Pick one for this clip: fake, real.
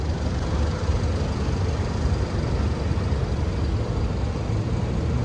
real